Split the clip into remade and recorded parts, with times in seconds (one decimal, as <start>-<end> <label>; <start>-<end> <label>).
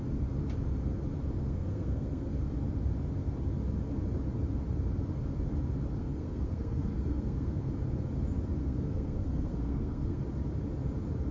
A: 0.0-1.4 recorded; 1.4-2.3 remade; 2.3-6.0 recorded; 6.0-7.7 remade; 7.7-8.6 recorded; 8.6-10.2 remade; 10.2-11.3 recorded